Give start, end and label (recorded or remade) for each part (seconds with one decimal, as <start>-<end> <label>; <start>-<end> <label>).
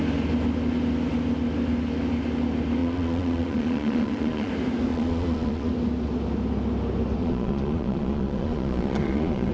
0.0-2.8 recorded; 2.8-4.5 remade; 4.5-4.9 recorded; 4.9-5.7 remade; 5.7-7.2 recorded; 7.2-9.5 remade